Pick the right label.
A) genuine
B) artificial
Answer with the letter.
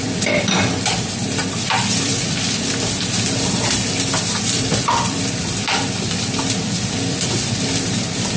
B